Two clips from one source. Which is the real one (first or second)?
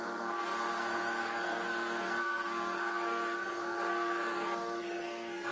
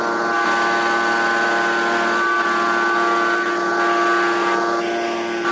second